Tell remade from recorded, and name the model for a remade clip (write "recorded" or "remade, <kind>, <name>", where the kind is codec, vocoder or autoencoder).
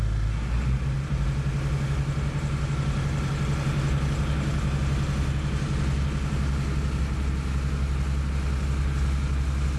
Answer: recorded